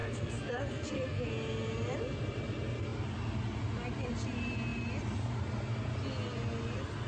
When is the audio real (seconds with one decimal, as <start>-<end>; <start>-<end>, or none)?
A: 1.3-7.1